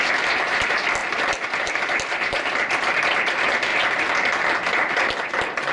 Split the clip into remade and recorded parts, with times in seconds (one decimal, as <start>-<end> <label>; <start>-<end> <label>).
0.0-1.0 remade; 1.0-3.1 recorded; 3.1-3.7 remade; 3.7-5.3 recorded; 5.3-5.7 remade